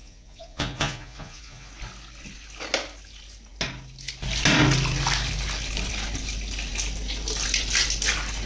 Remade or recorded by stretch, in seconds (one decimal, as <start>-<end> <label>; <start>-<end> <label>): 0.0-1.7 remade; 1.7-8.5 recorded